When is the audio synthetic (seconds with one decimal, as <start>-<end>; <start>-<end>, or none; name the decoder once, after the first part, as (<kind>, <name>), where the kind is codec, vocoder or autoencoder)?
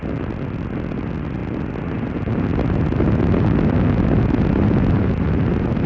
none